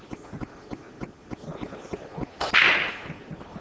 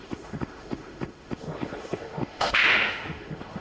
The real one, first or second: first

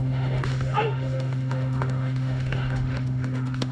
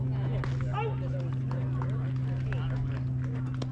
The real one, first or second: second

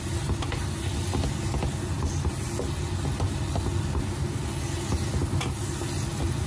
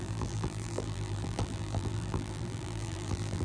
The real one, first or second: first